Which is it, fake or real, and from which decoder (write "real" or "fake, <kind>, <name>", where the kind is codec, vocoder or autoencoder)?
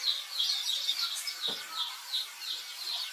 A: real